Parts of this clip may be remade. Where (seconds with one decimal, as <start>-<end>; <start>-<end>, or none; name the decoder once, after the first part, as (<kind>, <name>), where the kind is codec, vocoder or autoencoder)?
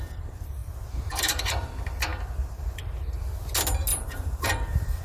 0.6-1.7 (vocoder, BigVGAN v2); 2.1-3.2; 3.9-5.0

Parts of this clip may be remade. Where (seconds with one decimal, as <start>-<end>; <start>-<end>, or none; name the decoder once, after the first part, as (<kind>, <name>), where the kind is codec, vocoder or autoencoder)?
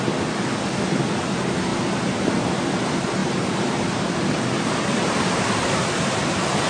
3.2-4.4 (vocoder, BigVGAN v2)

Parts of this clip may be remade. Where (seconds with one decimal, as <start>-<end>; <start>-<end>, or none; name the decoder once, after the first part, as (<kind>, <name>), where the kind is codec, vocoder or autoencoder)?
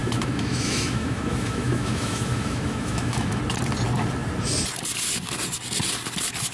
0.0-3.4 (autoencoder, DAC-VAE)